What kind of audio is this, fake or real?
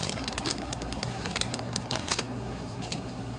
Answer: fake